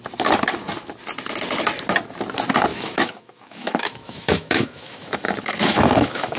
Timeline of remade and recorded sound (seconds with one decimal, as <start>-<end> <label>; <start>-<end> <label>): 0.0-2.7 recorded; 2.7-6.4 remade